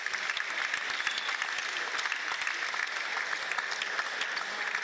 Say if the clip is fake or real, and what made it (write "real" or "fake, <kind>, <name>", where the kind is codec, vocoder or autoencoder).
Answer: real